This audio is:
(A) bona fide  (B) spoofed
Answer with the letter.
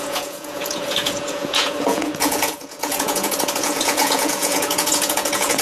B